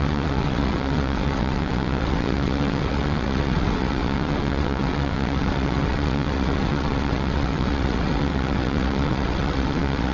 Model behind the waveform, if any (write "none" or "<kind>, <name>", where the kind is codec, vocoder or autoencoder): vocoder, WaveNeXt